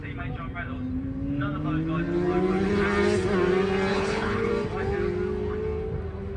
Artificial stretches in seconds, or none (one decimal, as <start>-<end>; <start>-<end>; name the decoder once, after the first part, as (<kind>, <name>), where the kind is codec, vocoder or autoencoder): 3.9-4.5 (codec, HILCodec)